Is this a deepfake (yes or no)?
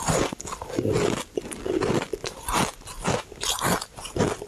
no